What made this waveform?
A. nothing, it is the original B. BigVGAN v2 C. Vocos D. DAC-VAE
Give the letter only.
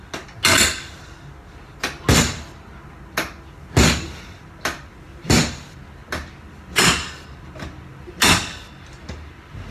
A